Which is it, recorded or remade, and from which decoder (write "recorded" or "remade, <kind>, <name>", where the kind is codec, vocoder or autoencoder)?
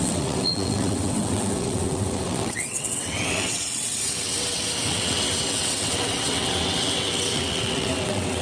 remade, vocoder, WaveNeXt